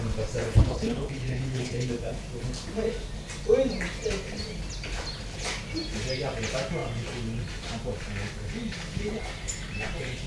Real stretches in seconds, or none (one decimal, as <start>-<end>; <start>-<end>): 0.0-0.4; 1.9-10.3